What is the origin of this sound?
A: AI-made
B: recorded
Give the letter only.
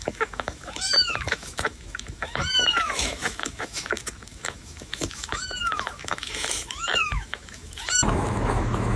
A